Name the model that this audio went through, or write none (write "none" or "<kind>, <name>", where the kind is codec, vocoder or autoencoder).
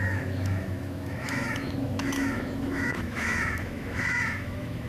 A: autoencoder, DAC-VAE